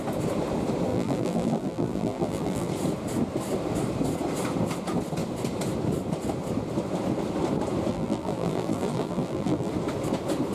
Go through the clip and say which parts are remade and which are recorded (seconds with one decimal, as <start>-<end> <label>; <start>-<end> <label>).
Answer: 0.0-0.9 recorded; 0.9-2.7 remade; 2.7-7.9 recorded; 7.9-9.7 remade; 9.7-10.5 recorded